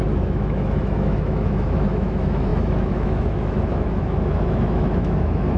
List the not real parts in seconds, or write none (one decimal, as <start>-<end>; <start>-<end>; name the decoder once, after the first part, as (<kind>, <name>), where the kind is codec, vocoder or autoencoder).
0.0-5.6 (autoencoder, DAC-VAE)